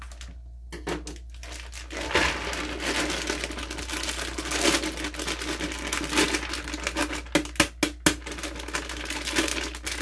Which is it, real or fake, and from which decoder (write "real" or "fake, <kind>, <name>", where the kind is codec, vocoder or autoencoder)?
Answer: real